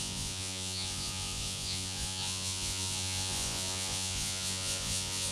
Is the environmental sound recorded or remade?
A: remade